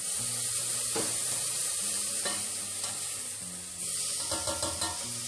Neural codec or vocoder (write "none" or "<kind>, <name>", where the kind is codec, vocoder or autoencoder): none